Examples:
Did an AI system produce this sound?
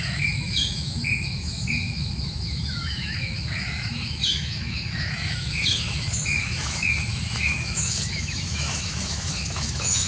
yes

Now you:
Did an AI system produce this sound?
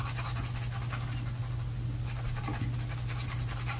no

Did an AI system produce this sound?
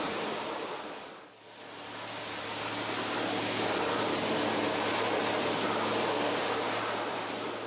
no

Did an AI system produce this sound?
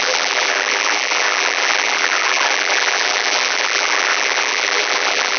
yes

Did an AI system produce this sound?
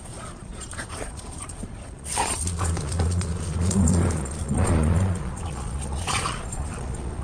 yes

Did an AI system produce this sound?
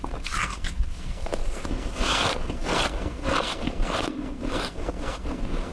yes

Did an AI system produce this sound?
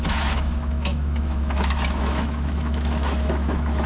yes